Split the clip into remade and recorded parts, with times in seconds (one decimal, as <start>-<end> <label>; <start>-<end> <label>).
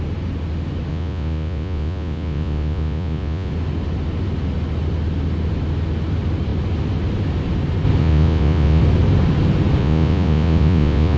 0.0-0.9 recorded; 0.9-3.5 remade; 3.5-8.0 recorded; 8.0-8.8 remade; 8.8-9.8 recorded; 9.8-11.2 remade